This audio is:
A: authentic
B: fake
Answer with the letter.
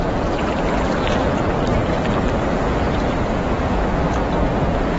B